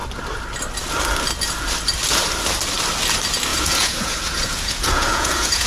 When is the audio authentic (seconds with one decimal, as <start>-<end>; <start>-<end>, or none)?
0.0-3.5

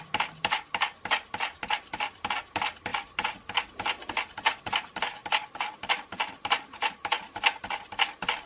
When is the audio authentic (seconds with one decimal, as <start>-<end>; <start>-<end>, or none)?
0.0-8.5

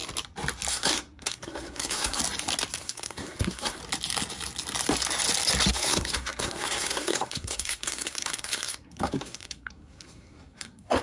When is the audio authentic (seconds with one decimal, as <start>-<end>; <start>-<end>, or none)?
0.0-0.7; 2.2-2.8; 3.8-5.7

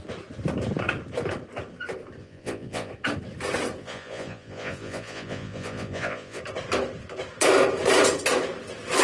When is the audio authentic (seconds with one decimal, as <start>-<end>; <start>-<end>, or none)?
0.0-2.2; 2.9-3.8; 6.4-9.0

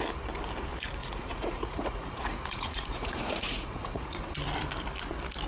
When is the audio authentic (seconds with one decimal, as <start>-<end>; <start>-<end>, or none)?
0.0-1.0; 4.3-5.5